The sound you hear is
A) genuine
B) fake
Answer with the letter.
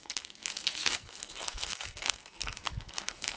B